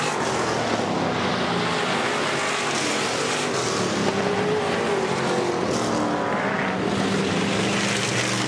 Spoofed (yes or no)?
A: no